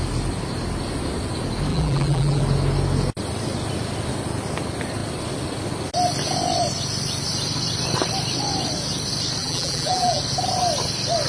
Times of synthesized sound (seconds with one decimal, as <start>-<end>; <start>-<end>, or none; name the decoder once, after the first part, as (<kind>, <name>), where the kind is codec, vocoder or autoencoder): 1.7-2.4 (vocoder, BigVGAN v2); 9.4-10.2